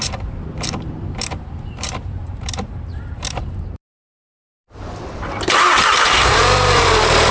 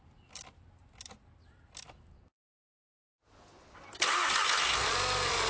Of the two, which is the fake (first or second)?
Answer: first